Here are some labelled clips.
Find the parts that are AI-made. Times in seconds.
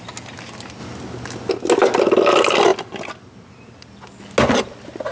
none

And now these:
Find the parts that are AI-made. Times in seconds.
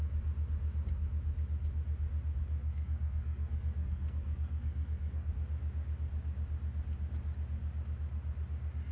2.6-5.3 (codec, SNAC)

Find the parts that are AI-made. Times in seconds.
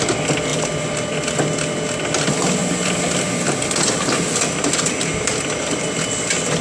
none